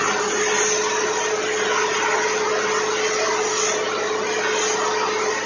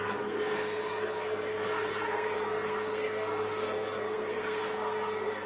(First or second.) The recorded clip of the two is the first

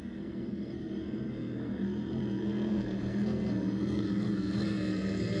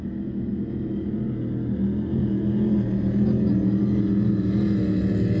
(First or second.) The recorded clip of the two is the second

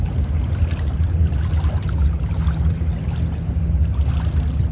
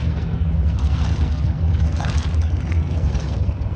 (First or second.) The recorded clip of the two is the first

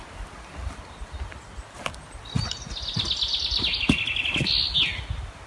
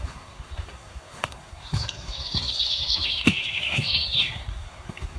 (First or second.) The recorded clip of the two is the first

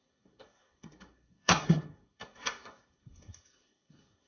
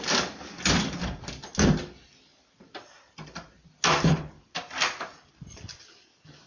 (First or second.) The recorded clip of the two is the second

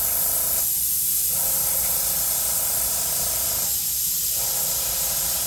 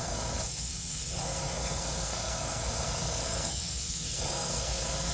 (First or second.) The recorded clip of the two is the first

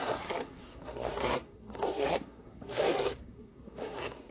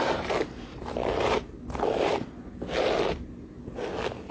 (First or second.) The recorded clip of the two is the second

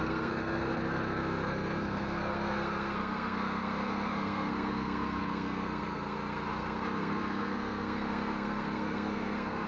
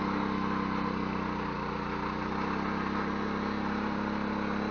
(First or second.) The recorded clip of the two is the second